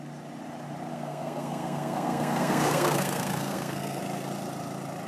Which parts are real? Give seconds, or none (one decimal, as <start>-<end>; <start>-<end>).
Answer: 0.0-0.9; 4.0-5.1